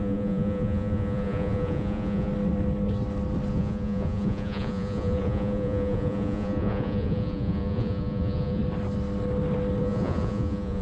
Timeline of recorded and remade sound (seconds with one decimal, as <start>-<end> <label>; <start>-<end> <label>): 0.0-2.3 remade; 2.3-3.5 recorded; 3.5-8.6 remade; 8.6-9.8 recorded; 9.8-10.8 remade